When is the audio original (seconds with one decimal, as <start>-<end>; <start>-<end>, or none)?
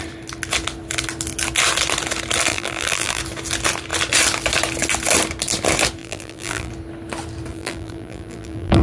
0.0-2.5; 3.2-6.0; 6.7-7.5